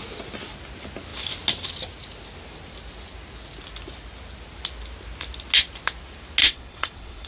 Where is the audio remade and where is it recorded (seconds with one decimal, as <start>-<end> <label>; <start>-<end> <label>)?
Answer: 0.0-6.4 recorded; 6.4-7.3 remade